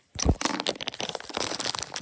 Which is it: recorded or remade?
recorded